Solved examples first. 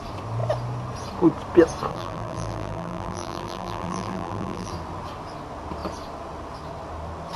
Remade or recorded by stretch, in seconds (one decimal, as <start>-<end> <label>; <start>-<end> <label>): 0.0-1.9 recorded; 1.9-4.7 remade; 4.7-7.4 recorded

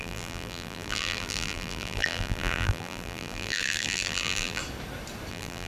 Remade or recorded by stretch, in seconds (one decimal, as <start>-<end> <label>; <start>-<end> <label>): 0.0-4.6 remade; 4.6-5.3 recorded; 5.3-5.7 remade

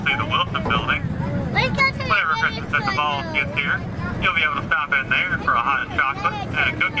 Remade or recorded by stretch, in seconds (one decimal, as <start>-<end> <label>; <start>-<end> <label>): 0.0-7.0 recorded